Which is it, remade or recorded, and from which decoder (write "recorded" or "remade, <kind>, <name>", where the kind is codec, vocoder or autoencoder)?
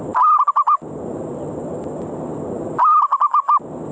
recorded